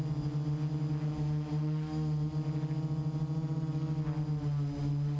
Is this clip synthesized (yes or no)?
no